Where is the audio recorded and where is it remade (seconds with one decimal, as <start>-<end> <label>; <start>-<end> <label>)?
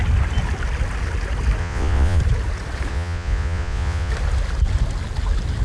0.0-1.6 recorded; 1.6-2.2 remade; 2.2-2.9 recorded; 2.9-4.1 remade; 4.1-5.6 recorded